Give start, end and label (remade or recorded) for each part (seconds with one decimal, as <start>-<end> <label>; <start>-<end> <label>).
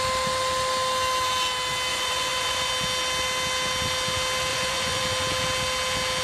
0.0-1.9 recorded; 1.9-2.7 remade; 2.7-4.5 recorded; 4.5-5.0 remade; 5.0-6.2 recorded